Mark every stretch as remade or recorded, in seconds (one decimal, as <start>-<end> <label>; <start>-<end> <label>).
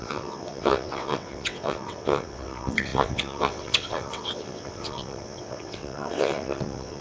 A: 0.0-7.0 remade